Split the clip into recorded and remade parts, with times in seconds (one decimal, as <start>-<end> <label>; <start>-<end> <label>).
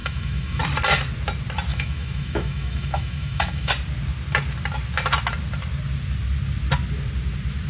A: 0.0-0.6 remade; 0.6-1.7 recorded; 1.7-3.7 remade; 3.7-7.7 recorded